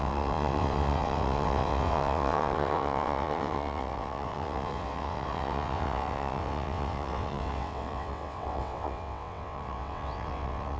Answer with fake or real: fake